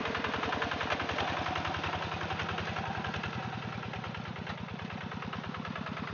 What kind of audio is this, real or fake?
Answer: real